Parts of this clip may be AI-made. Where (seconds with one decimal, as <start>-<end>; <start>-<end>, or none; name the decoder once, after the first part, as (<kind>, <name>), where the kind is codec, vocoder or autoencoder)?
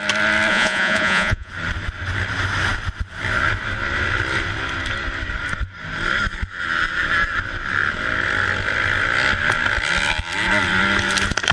0.5-1.5 (vocoder, Vocos)